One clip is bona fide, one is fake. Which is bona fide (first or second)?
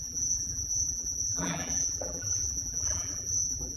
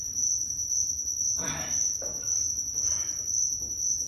second